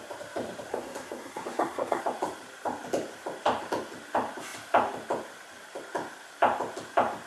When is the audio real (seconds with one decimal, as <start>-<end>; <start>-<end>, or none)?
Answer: 0.0-0.7; 2.0-7.3